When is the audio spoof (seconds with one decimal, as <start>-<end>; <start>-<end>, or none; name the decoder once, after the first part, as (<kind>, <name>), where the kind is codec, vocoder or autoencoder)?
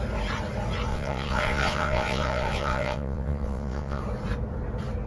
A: 0.9-4.0 (vocoder, WaveNeXt)